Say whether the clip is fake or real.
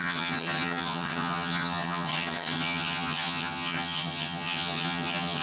fake